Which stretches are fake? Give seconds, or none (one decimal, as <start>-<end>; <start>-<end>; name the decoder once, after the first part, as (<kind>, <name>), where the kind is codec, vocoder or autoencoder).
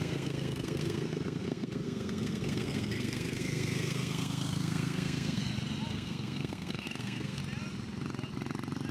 0.0-5.4 (codec, SNAC); 5.9-7.4